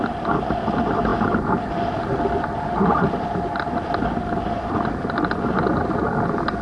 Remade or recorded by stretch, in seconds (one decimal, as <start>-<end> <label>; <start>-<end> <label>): 0.0-6.6 recorded